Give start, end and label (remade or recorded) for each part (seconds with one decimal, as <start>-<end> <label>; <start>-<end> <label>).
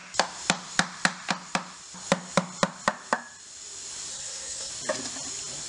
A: 0.0-4.1 recorded; 4.1-4.7 remade; 4.7-5.7 recorded